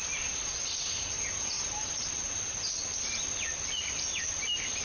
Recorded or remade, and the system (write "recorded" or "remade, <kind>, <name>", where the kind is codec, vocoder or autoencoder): recorded